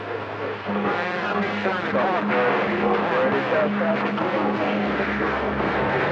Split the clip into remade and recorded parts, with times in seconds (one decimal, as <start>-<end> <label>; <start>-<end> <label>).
0.0-1.7 remade; 1.7-2.3 recorded; 2.3-3.0 remade; 3.0-3.9 recorded; 3.9-6.1 remade